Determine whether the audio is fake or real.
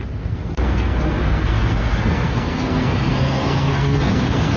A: fake